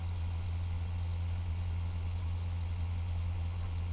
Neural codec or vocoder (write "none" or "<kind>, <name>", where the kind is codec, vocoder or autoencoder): vocoder, Vocos